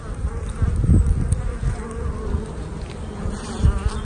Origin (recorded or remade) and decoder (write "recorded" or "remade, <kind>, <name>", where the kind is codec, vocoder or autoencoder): recorded